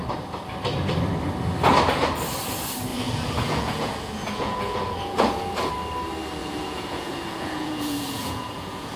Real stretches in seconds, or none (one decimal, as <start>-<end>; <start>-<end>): 0.0-2.9; 5.7-6.4